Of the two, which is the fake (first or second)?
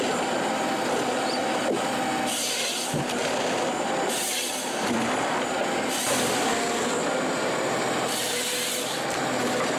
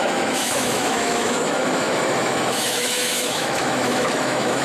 second